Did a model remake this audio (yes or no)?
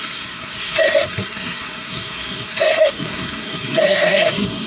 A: yes